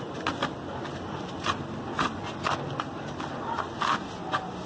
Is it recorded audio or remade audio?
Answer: recorded